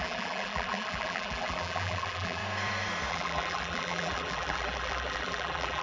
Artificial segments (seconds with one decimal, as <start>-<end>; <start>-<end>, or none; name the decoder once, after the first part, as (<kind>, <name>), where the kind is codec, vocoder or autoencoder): 0.0-2.4 (vocoder, BigVGAN v2); 3.1-5.8